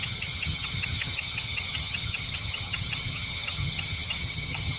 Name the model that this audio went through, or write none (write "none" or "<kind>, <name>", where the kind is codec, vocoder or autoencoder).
vocoder, HiFi-GAN